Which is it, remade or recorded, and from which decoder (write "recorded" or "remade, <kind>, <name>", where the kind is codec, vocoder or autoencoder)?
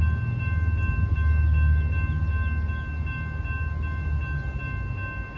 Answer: recorded